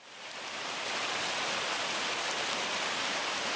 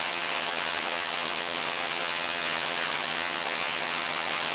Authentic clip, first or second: first